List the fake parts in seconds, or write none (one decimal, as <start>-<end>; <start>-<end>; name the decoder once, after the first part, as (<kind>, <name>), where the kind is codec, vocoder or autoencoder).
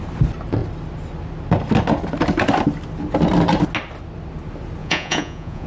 4.8-5.7 (vocoder, Vocos)